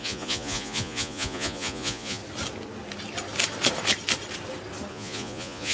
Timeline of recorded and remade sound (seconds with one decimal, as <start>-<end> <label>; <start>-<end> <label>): 0.0-2.2 remade; 2.2-4.9 recorded; 4.9-5.7 remade